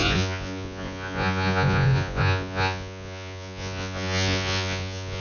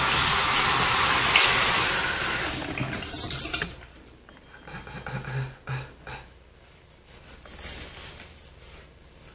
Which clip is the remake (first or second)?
first